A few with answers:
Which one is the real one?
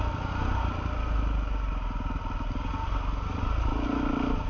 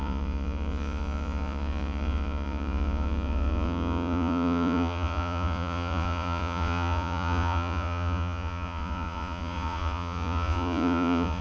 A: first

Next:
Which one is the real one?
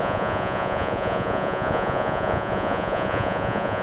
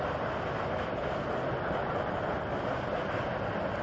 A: second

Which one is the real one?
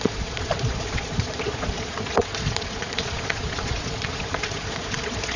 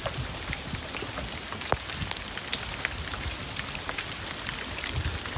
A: second